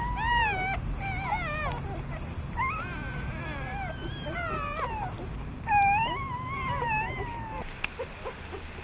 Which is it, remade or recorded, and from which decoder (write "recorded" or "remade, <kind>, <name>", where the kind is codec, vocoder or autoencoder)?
recorded